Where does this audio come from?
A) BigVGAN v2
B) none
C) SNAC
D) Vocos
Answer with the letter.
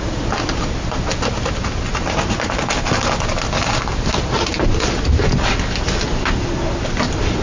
B